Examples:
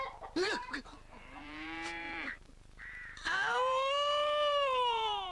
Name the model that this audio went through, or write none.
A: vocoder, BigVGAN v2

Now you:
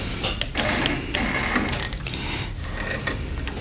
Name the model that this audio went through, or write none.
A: none